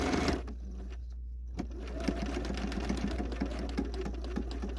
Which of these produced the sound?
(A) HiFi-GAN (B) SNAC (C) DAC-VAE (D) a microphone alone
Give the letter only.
D